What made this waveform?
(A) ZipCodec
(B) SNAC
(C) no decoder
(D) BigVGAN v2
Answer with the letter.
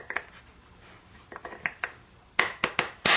C